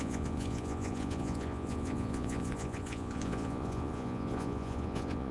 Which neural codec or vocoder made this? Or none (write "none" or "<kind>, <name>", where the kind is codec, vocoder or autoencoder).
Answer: vocoder, Vocos